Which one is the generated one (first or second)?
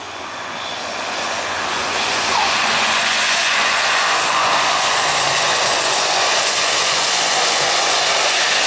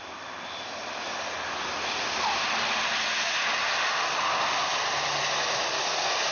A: first